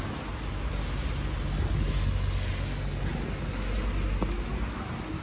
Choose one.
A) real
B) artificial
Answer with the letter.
A